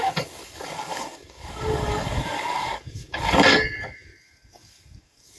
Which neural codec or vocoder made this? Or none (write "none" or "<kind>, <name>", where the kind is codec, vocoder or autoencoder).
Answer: codec, DAC